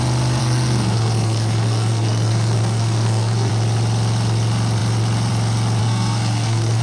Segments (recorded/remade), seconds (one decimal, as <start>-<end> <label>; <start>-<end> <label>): 0.0-0.4 recorded; 0.4-3.5 remade; 3.5-5.8 recorded; 5.8-6.8 remade

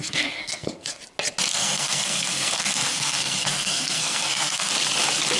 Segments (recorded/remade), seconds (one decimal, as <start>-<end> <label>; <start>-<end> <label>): 0.0-1.0 remade; 1.0-1.5 recorded; 1.5-4.7 remade; 4.7-5.4 recorded